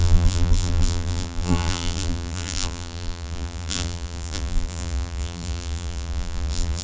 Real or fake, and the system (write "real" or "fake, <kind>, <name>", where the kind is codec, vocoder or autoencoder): fake, vocoder, BigVGAN v2